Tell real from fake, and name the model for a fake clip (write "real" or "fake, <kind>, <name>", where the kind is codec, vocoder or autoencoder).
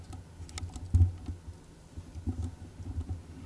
real